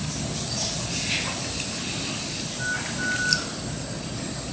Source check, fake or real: real